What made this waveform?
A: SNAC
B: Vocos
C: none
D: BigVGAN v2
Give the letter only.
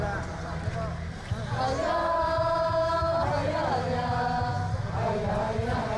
C